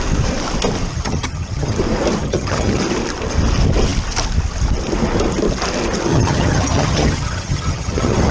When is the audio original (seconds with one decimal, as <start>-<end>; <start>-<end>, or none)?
0.0-0.9; 1.8-2.2; 2.8-6.1